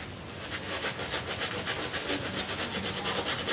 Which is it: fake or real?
real